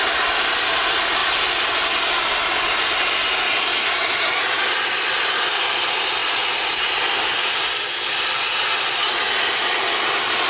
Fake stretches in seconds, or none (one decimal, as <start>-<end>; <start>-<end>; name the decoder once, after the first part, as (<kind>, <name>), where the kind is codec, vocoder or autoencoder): none